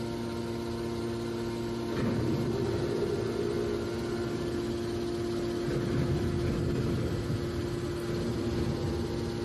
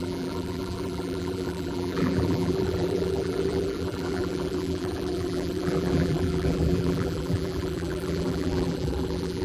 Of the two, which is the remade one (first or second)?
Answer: second